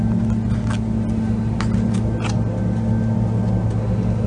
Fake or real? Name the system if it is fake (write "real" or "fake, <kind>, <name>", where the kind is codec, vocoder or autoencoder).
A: real